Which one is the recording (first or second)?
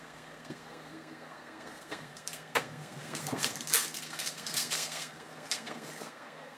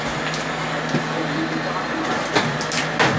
second